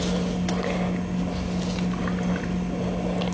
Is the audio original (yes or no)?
yes